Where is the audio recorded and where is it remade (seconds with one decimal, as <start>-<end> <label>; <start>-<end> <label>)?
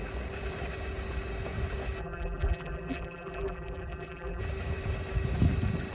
0.0-2.0 recorded; 2.0-4.4 remade; 4.4-5.9 recorded